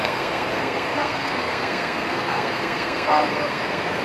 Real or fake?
fake